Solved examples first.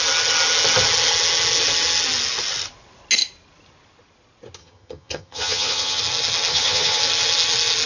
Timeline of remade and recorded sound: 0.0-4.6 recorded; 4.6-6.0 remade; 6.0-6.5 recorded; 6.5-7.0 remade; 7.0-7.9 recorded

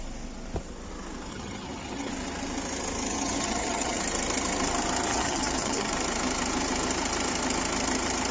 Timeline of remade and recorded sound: 0.0-1.3 recorded; 1.3-2.1 remade; 2.1-3.1 recorded; 3.1-4.0 remade; 4.0-5.1 recorded; 5.1-5.9 remade; 5.9-8.3 recorded

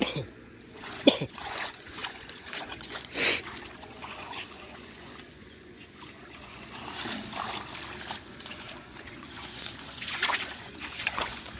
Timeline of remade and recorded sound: 0.0-6.8 remade; 6.8-8.2 recorded; 8.2-11.6 remade

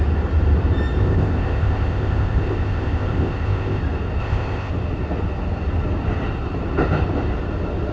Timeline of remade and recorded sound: 0.0-1.0 recorded; 1.0-3.8 remade; 3.8-4.2 recorded; 4.2-4.7 remade; 4.7-7.9 recorded

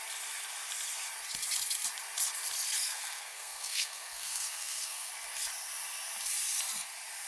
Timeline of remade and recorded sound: 0.0-2.9 recorded; 2.9-5.1 remade; 5.1-7.3 recorded